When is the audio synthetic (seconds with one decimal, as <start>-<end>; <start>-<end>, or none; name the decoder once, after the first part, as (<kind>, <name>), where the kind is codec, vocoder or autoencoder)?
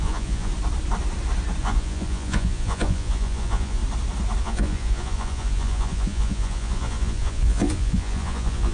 0.0-0.5 (vocoder, Vocos); 1.6-3.8; 4.4-8.7